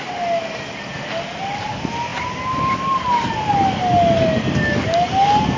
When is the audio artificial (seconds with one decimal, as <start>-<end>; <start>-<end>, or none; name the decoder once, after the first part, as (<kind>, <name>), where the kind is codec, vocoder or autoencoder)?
none